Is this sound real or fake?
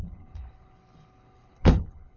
fake